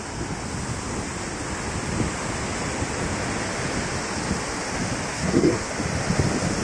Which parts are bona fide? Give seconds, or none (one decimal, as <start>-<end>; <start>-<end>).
0.0-5.1; 5.7-6.6